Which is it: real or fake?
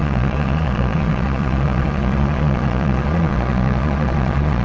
fake